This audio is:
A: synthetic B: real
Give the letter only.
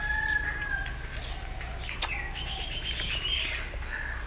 B